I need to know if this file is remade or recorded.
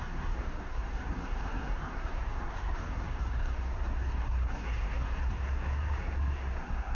remade